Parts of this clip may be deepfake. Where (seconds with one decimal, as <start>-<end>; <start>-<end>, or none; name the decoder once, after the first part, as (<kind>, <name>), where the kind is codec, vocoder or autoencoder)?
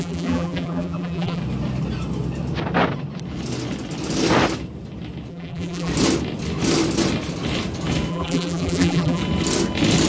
0.0-1.4 (vocoder, BigVGAN v2); 5.3-5.9; 8.1-9.2